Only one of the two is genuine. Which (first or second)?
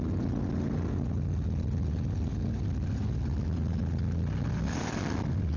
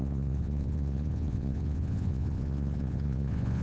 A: first